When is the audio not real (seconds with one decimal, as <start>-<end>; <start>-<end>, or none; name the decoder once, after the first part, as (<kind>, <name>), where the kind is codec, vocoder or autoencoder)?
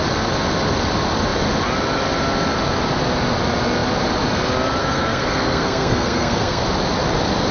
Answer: 4.8-6.6 (codec, SNAC)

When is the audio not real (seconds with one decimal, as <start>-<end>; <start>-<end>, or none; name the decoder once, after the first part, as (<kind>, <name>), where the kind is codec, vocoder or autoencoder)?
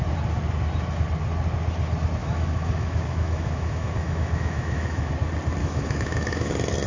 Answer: 2.2-5.1 (autoencoder, DAC-VAE); 5.6-6.5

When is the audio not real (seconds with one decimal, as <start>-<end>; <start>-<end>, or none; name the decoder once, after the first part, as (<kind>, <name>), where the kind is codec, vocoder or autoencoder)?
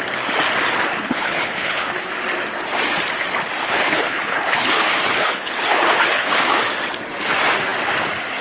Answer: 0.9-2.1 (codec, HILCodec); 3.6-6.6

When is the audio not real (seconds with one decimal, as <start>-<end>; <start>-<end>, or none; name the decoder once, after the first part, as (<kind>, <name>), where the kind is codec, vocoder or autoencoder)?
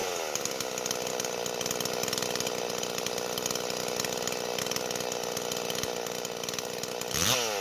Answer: none